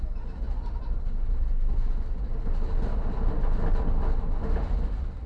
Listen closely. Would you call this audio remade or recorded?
recorded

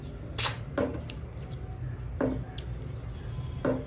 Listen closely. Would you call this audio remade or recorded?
recorded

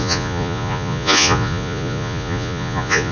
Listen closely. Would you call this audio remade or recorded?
remade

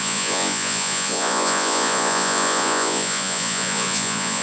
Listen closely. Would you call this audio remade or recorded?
remade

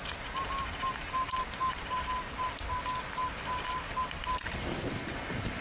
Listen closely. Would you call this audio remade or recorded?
recorded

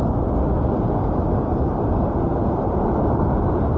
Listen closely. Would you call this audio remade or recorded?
recorded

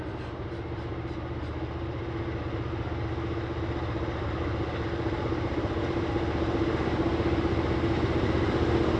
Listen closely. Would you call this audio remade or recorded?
recorded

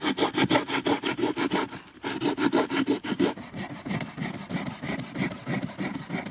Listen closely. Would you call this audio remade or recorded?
recorded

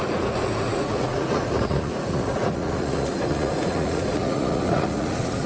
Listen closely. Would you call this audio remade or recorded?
remade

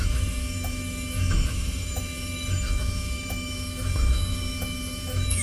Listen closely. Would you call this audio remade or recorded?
remade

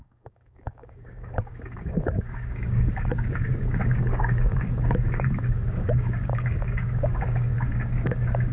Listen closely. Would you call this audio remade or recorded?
remade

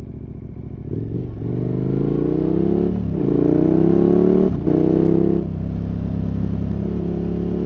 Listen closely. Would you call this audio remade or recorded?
recorded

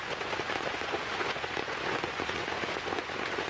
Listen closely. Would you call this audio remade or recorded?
remade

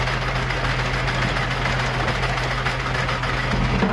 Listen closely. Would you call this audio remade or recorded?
recorded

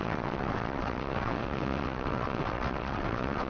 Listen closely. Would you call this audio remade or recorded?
remade